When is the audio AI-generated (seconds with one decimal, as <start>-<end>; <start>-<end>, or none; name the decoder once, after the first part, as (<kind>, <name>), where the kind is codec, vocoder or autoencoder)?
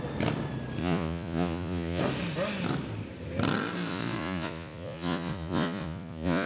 0.8-2.0 (vocoder, Vocos); 3.9-6.5